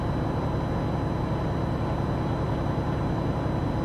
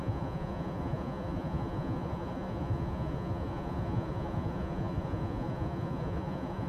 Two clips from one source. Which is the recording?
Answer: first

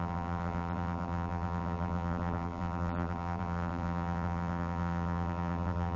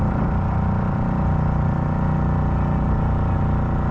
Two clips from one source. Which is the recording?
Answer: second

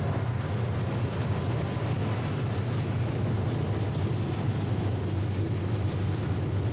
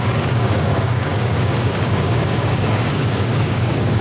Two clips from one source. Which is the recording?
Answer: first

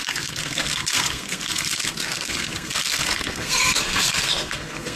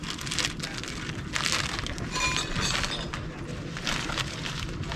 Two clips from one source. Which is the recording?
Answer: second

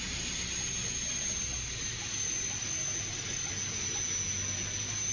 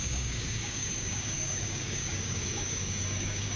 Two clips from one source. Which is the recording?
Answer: first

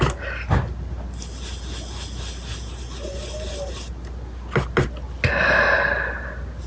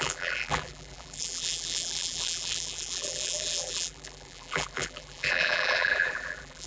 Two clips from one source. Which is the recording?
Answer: first